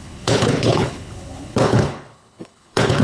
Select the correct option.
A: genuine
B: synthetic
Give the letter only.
B